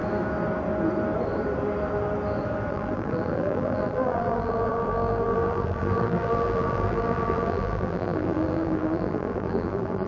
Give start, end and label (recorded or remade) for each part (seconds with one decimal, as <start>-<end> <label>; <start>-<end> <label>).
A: 0.0-2.7 recorded; 2.7-10.1 remade